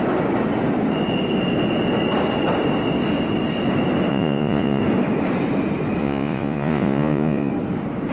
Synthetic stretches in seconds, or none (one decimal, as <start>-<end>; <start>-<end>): 4.1-4.8; 6.0-7.5